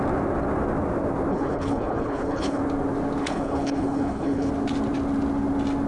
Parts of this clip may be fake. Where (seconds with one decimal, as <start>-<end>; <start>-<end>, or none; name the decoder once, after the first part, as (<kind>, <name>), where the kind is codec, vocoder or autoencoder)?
1.3-2.6 (codec, HILCodec); 3.2-4.5